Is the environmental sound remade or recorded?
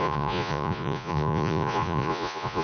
remade